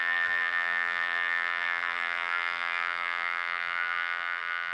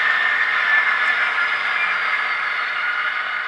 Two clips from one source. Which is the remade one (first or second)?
first